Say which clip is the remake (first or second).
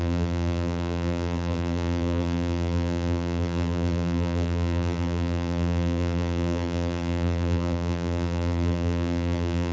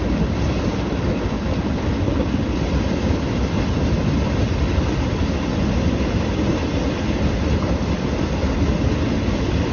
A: first